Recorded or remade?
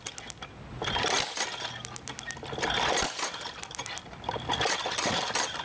recorded